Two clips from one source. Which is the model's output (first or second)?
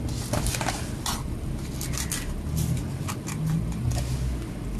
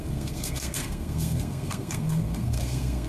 second